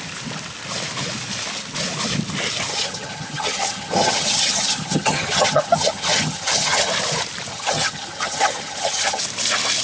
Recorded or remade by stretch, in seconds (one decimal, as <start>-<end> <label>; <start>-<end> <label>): 0.0-2.7 recorded; 2.7-6.9 remade; 6.9-7.5 recorded; 7.5-9.2 remade; 9.2-9.8 recorded